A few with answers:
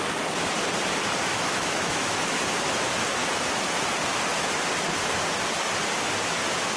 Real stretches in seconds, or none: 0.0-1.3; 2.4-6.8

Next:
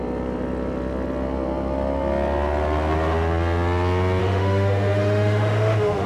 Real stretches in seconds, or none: 0.0-4.2

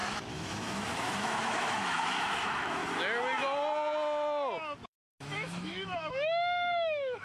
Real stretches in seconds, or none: 2.8-5.1

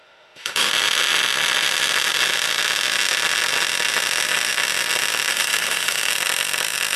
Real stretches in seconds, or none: 0.7-5.3; 6.1-7.0